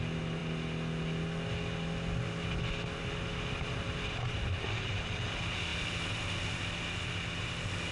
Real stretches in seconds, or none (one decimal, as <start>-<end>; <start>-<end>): 0.0-7.9